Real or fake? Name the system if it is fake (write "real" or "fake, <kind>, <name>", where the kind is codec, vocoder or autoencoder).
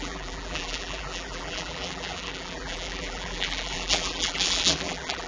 fake, vocoder, BigVGAN v2